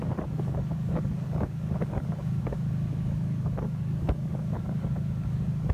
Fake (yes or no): yes